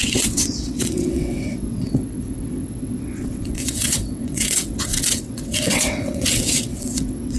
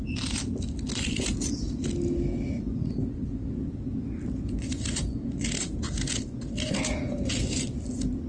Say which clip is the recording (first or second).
second